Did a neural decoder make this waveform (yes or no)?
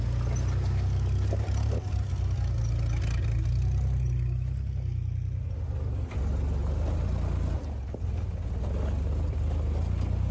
no